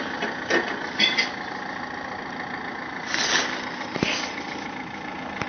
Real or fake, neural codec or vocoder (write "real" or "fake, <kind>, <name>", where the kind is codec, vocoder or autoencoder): real